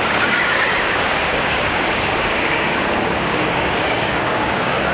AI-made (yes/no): yes